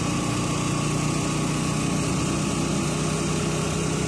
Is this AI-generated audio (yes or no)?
no